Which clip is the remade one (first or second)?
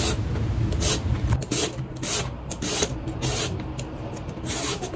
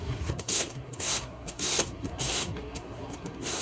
second